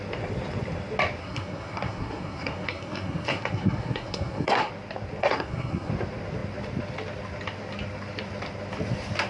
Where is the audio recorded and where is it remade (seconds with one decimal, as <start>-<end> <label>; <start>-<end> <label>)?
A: 0.0-1.2 recorded; 1.2-4.7 remade; 4.7-5.2 recorded; 5.2-5.9 remade; 5.9-9.3 recorded

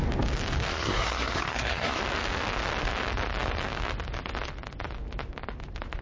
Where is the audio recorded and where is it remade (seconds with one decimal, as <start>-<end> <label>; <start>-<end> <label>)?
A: 0.0-0.7 recorded; 0.7-2.0 remade; 2.0-6.0 recorded

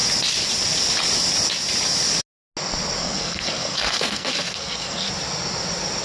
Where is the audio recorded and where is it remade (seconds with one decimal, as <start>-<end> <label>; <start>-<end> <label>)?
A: 0.0-3.0 recorded; 3.0-5.1 remade; 5.1-6.0 recorded

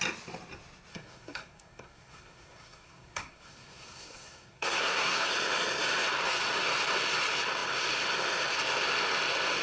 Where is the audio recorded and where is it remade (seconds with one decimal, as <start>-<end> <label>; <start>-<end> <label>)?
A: 0.0-0.9 recorded; 0.9-5.3 remade; 5.3-9.6 recorded